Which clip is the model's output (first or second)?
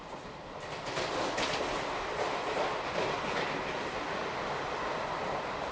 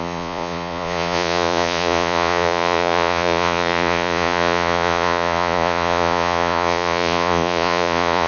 second